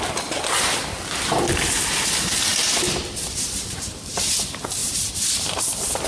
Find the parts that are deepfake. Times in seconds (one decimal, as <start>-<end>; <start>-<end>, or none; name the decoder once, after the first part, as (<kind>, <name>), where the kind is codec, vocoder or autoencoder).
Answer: 2.5-4.1 (vocoder, BigVGAN v2); 4.8-6.1